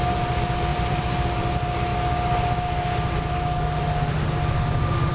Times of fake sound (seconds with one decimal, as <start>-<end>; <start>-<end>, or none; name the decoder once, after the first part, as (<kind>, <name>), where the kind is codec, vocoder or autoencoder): 0.7-1.5 (vocoder, BigVGAN v2)